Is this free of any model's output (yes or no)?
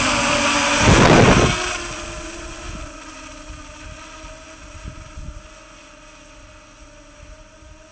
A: yes